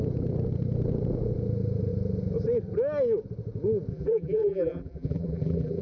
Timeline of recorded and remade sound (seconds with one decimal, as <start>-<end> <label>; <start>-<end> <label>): 0.0-3.9 recorded; 3.9-5.8 remade